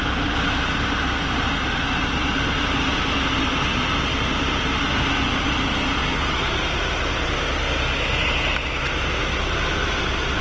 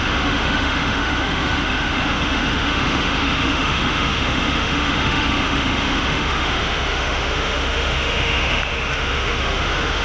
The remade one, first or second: second